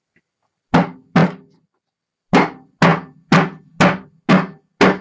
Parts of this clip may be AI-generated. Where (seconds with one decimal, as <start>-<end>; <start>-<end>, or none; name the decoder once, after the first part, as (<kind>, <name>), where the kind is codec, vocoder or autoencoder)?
none